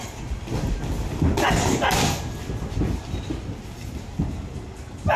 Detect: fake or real real